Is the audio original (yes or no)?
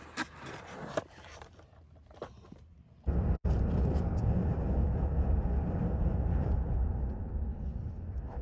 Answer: no